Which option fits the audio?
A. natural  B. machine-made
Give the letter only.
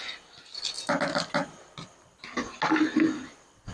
A